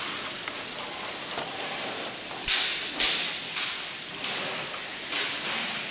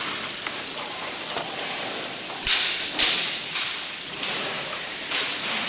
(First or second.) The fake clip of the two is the second